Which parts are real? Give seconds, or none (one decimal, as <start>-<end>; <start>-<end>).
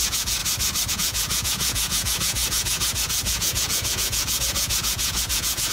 0.4-0.9